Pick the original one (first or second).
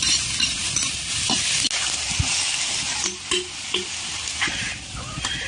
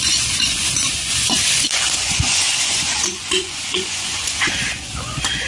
first